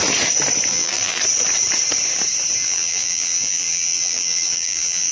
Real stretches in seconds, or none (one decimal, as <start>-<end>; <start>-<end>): 0.0-0.7; 1.2-2.6